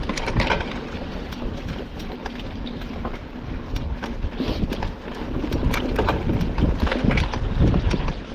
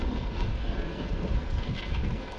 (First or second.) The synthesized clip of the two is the second